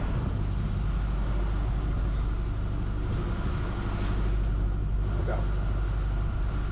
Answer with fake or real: real